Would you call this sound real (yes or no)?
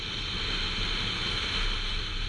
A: yes